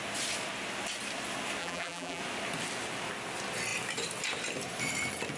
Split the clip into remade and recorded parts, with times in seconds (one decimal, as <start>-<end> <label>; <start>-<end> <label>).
0.0-1.6 recorded; 1.6-2.2 remade; 2.2-5.4 recorded